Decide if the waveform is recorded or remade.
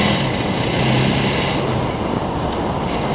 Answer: recorded